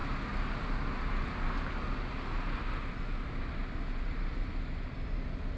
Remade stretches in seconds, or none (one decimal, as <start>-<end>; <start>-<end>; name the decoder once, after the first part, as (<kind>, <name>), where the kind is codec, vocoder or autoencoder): none